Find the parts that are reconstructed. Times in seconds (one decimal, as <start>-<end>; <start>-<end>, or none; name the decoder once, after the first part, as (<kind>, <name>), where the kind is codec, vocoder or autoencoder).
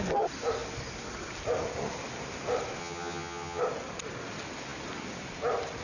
2.8-3.6 (vocoder, HiFi-GAN)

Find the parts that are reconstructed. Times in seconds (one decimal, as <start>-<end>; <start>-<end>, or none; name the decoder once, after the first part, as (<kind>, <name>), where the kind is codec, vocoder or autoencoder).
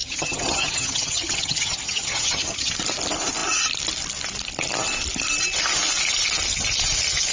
0.0-2.7 (vocoder, HiFi-GAN)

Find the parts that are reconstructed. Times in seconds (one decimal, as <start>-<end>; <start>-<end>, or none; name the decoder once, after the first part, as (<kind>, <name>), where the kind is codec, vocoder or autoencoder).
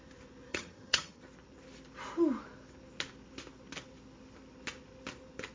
0.5-1.2 (vocoder, HiFi-GAN)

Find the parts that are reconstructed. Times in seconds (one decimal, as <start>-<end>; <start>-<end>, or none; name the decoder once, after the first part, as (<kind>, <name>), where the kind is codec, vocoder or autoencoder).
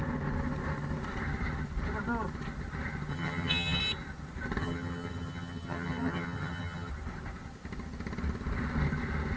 3.1-3.8 (vocoder, HiFi-GAN); 4.6-6.9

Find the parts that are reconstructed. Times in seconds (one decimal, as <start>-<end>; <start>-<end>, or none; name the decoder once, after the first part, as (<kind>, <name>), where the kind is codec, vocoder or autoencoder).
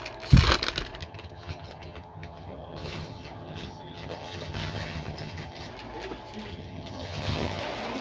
1.0-5.7 (vocoder, HiFi-GAN); 6.5-7.6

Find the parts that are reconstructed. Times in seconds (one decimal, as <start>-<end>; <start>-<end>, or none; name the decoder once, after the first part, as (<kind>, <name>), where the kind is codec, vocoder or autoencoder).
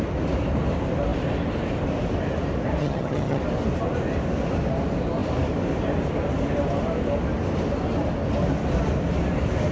2.8-3.4 (vocoder, HiFi-GAN)